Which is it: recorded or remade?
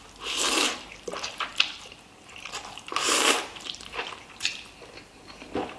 remade